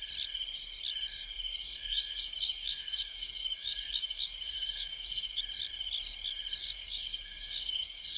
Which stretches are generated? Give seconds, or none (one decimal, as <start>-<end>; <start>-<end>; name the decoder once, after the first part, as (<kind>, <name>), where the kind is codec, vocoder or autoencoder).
1.5-5.4 (codec, DAC); 6.6-8.2